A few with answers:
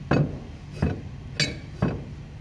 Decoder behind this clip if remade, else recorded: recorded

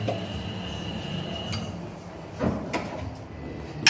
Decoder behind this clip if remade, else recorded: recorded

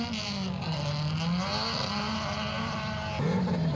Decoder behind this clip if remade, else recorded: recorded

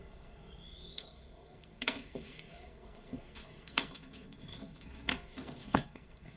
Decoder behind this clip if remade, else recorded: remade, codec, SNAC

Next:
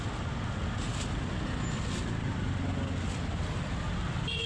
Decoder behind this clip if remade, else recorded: recorded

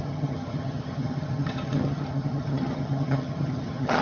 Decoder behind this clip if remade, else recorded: remade, vocoder, HiFi-GAN